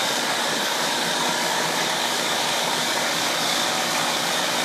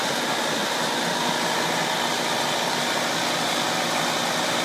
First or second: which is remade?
first